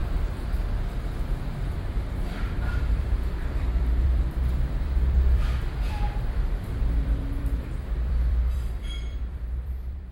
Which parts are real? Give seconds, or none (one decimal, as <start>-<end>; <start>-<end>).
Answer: 0.0-1.7